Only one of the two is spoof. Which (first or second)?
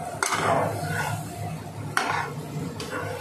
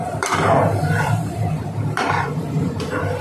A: second